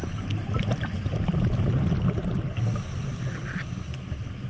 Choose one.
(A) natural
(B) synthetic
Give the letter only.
A